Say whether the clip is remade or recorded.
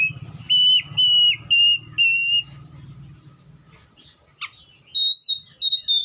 recorded